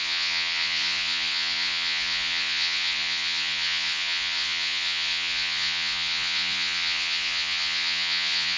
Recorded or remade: remade